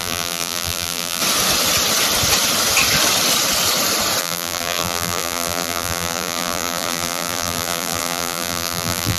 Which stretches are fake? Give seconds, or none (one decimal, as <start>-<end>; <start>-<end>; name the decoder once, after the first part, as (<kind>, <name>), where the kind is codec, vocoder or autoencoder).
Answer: 0.0-1.2 (vocoder, BigVGAN v2); 4.2-9.2